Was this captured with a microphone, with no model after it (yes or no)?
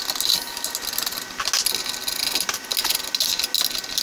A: yes